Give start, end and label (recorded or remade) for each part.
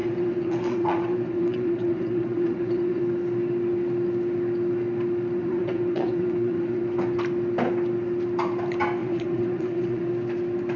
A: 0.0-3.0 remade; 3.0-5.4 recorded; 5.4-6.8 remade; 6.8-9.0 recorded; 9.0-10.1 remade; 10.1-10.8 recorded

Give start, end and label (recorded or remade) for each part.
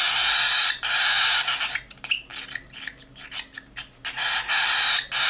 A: 0.0-5.3 recorded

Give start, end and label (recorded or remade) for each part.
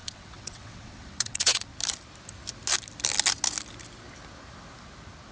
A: 0.0-1.7 remade; 1.7-5.3 recorded